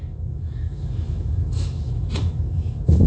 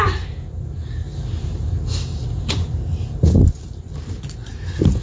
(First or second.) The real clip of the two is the second